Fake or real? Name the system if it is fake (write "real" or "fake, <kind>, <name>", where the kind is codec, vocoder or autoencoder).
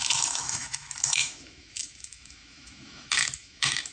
fake, autoencoder, DAC-VAE